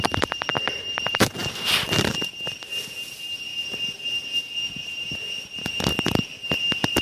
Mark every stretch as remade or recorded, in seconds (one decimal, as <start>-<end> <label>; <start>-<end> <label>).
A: 0.0-7.0 remade